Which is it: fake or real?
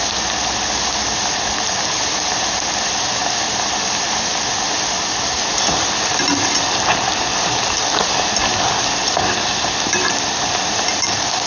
real